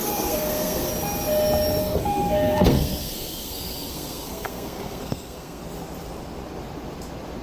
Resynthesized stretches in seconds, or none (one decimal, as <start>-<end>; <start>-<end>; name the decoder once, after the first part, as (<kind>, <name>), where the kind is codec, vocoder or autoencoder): 0.0-0.9 (codec, SNAC); 1.8-5.6